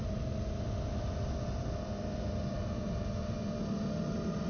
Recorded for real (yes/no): yes